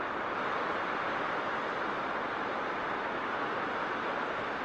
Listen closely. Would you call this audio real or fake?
real